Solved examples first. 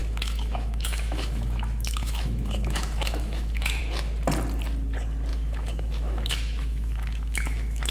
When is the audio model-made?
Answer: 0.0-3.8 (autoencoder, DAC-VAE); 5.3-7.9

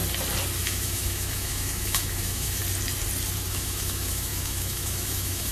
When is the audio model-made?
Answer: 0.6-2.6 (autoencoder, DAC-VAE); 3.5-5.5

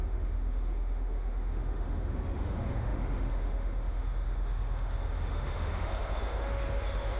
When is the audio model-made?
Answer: 0.0-7.2 (autoencoder, DAC-VAE)

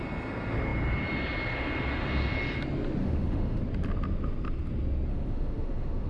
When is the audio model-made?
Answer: 3.0-3.6 (autoencoder, DAC-VAE); 5.1-6.1